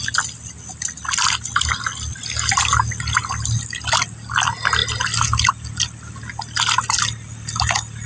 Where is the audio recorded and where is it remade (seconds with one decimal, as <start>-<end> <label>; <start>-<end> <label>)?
0.0-8.1 recorded